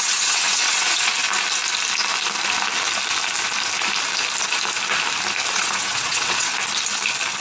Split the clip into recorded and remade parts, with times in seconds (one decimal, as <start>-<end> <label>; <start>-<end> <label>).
0.0-1.1 remade; 1.1-5.5 recorded; 5.5-6.5 remade; 6.5-7.4 recorded